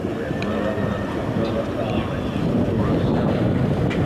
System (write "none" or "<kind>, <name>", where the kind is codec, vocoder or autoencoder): none